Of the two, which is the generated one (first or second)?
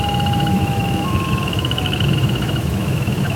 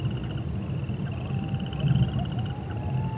first